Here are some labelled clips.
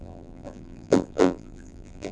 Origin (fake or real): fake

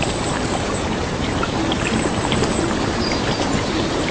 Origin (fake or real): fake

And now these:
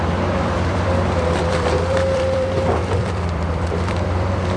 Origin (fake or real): fake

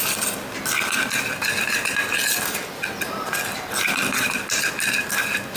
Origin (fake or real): real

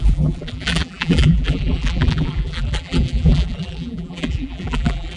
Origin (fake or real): fake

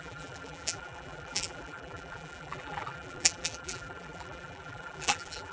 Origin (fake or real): fake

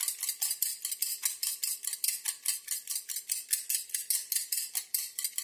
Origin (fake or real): real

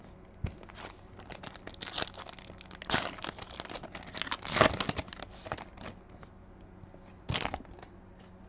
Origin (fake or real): real